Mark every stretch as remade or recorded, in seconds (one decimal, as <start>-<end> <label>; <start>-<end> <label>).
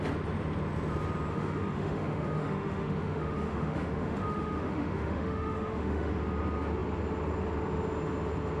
0.0-1.3 recorded; 1.3-6.1 remade; 6.1-8.6 recorded